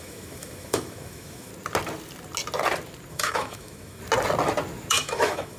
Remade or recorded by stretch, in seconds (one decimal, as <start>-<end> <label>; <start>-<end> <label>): 0.0-1.5 remade; 1.5-3.1 recorded; 3.1-4.0 remade; 4.0-4.9 recorded; 4.9-5.6 remade